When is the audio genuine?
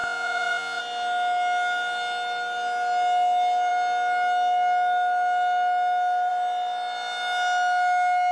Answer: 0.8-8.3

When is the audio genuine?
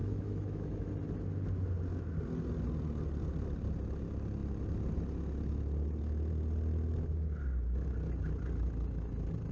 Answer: 0.9-9.5